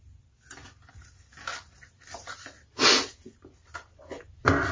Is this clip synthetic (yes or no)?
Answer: no